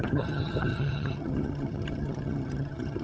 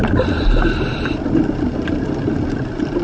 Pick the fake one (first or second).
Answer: first